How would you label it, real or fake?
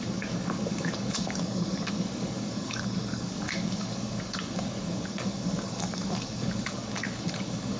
fake